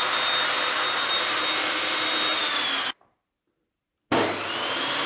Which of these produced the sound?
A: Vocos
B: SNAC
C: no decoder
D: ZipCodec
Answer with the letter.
C